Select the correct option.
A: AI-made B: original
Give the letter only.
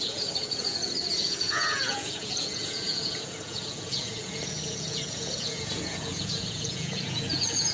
A